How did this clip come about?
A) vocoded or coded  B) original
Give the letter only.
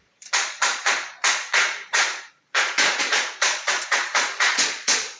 A